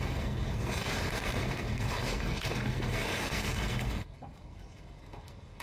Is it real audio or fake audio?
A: fake